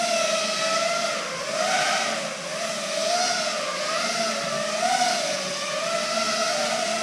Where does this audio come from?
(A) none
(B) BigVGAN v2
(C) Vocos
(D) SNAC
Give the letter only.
A